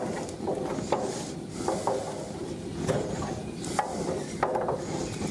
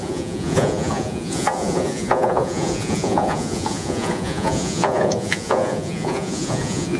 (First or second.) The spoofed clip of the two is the second